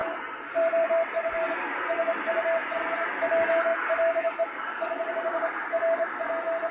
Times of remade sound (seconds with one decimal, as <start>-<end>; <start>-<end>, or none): 0.0-1.5; 3.7-5.7